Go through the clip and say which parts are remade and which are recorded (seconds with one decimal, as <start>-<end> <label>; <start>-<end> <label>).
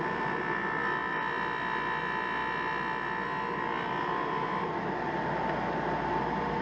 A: 0.0-6.6 recorded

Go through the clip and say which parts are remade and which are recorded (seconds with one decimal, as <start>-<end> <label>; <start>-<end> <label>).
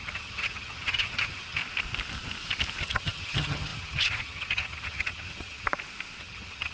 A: 0.0-1.6 remade; 1.6-2.8 recorded; 2.8-5.7 remade; 5.7-6.2 recorded; 6.2-6.7 remade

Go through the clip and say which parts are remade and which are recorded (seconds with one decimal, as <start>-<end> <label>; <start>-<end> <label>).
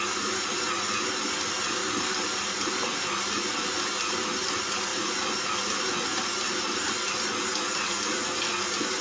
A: 0.0-9.0 recorded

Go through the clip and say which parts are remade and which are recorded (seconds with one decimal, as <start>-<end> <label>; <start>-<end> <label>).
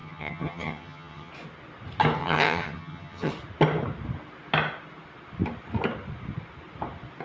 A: 0.0-1.3 remade; 1.3-2.2 recorded; 2.2-3.3 remade; 3.3-7.2 recorded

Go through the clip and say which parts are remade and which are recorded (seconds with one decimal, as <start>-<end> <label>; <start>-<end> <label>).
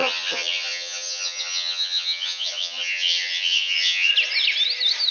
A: 0.0-4.1 remade; 4.1-5.1 recorded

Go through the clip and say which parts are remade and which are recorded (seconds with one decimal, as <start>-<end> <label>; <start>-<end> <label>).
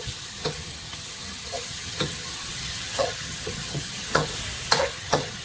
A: 0.0-4.3 remade; 4.3-4.8 recorded; 4.8-5.4 remade